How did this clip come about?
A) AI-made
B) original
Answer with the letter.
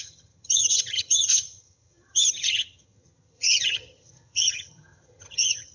A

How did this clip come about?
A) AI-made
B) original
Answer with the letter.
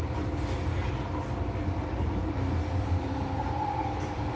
B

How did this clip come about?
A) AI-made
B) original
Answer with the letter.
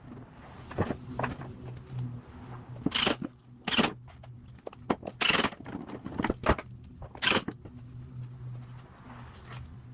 B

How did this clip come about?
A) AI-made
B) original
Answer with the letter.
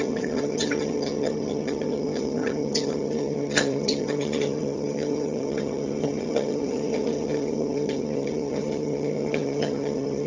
A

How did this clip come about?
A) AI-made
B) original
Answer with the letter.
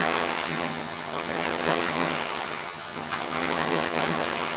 A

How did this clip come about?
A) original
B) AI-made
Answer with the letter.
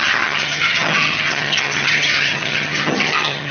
B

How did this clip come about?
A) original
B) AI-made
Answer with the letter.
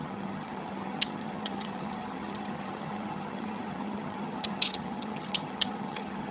B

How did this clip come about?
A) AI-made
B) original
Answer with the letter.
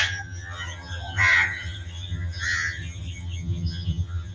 A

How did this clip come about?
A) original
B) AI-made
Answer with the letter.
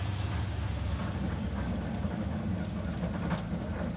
A